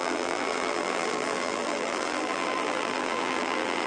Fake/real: fake